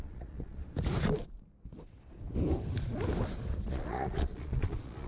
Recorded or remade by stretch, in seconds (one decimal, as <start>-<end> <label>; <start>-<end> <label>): 0.0-0.6 remade; 0.6-3.7 recorded; 3.7-5.1 remade